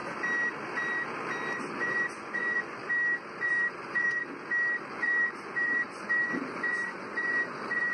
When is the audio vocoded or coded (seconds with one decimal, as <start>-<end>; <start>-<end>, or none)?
1.7-2.8; 3.4-4.2; 4.9-7.9